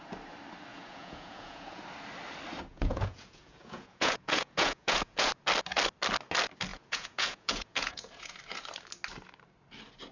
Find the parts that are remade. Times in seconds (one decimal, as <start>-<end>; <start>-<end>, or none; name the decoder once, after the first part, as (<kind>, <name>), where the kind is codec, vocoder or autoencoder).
0.7-1.8 (vocoder, Vocos); 2.7-5.3; 6.7-8.3